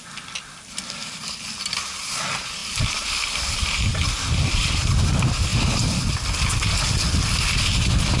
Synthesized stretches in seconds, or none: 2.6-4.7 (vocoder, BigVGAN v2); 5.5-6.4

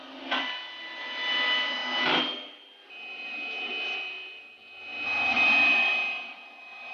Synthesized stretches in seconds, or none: none